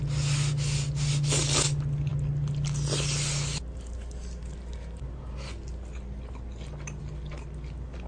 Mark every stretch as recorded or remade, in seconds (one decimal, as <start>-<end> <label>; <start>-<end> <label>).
0.0-8.1 recorded